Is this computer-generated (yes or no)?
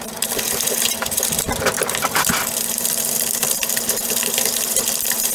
yes